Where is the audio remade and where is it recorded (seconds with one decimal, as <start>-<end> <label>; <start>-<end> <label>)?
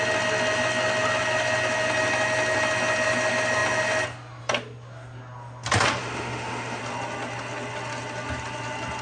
0.0-6.0 recorded; 6.0-6.8 remade; 6.8-9.0 recorded